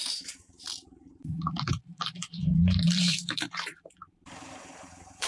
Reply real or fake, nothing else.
fake